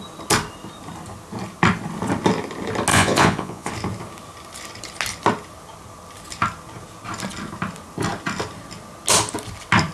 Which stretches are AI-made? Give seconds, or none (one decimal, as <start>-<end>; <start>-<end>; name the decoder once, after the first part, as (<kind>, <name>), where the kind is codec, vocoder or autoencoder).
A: 2.9-3.7 (vocoder, Vocos)